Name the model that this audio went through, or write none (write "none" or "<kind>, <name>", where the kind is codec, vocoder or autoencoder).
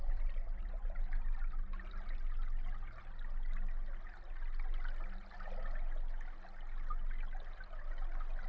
none